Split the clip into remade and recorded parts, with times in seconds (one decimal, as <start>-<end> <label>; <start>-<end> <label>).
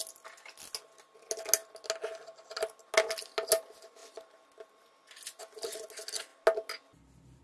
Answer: 0.0-7.4 recorded